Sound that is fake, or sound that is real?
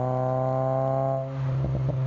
real